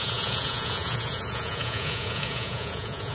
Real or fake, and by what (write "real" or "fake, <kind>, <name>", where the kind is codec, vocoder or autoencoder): fake, vocoder, Vocos